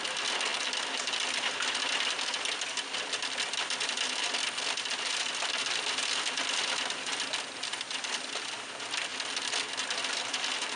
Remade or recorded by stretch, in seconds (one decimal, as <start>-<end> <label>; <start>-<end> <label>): 0.0-7.1 remade; 7.1-7.7 recorded; 7.7-9.1 remade; 9.1-10.1 recorded; 10.1-10.8 remade